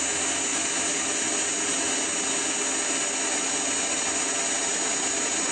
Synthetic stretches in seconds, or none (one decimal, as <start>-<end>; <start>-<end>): none